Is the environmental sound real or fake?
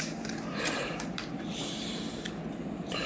fake